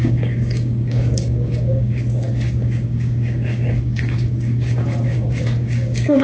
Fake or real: fake